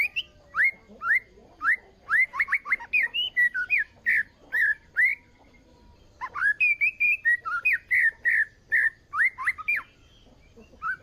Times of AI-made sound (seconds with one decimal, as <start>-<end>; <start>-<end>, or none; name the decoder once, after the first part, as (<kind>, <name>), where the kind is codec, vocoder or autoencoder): 1.4-6.3 (vocoder, BigVGAN v2)